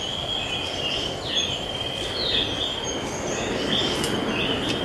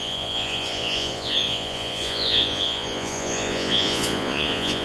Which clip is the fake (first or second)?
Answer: second